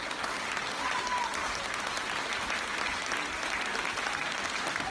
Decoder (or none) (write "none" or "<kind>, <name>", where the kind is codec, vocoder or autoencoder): none